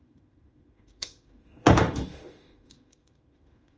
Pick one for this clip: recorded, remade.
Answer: remade